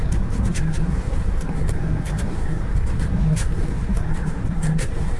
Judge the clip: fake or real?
fake